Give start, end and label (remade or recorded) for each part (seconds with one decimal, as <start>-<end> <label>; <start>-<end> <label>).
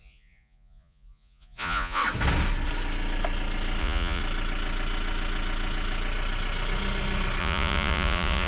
0.0-2.0 remade; 2.0-3.8 recorded; 3.8-4.2 remade; 4.2-7.4 recorded; 7.4-8.5 remade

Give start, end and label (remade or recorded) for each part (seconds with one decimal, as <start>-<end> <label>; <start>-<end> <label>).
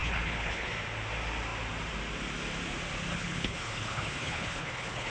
0.0-0.7 remade; 0.7-3.1 recorded; 3.1-5.1 remade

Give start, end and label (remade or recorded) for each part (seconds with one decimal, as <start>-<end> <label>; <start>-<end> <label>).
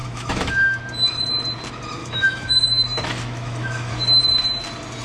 0.0-0.8 remade; 0.8-2.0 recorded; 2.0-3.9 remade; 3.9-5.0 recorded